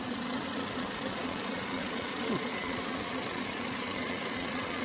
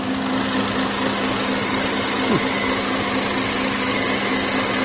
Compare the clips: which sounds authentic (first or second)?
second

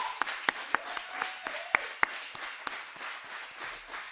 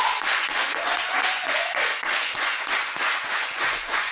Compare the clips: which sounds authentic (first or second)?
first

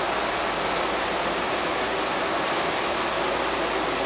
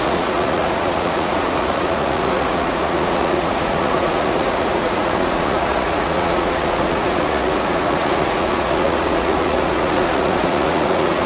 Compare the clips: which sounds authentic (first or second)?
first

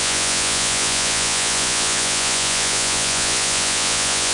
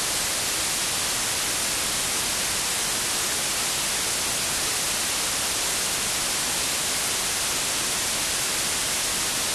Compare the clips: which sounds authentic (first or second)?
second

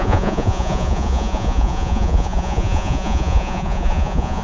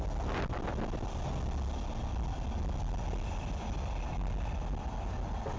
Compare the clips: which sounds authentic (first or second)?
second